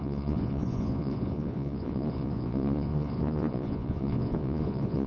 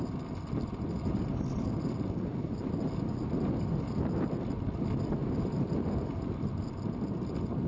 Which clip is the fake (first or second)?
first